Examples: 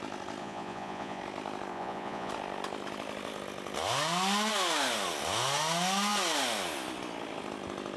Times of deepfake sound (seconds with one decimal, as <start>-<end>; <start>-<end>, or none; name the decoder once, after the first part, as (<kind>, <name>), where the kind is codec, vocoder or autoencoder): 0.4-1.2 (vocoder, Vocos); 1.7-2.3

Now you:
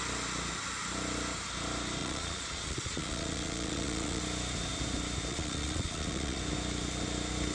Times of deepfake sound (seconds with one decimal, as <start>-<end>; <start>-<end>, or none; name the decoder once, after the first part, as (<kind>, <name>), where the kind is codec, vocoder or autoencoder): 2.0-4.2 (vocoder, Vocos); 5.3-6.4

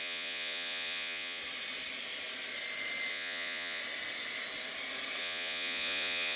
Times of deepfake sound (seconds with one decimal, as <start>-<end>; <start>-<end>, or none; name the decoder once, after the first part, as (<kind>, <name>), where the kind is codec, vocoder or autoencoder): 0.0-1.4 (vocoder, Vocos); 3.1-3.8; 5.2-6.4